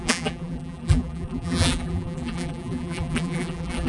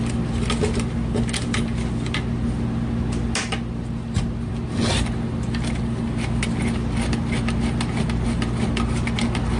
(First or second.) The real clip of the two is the second